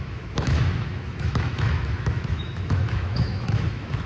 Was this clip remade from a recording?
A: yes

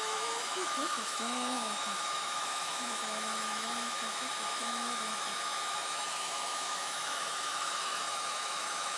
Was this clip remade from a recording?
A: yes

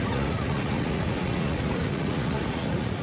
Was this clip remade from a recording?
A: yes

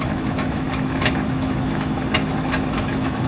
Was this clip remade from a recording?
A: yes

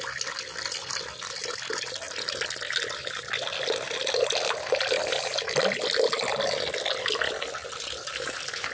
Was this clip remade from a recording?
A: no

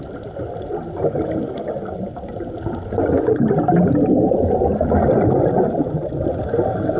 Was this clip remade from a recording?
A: no